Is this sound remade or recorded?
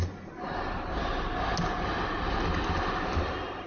recorded